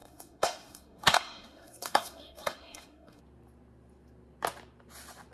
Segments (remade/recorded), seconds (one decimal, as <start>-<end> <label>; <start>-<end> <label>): 0.0-3.2 remade; 3.2-5.3 recorded